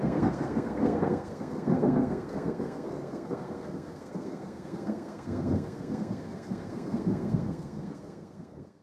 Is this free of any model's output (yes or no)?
no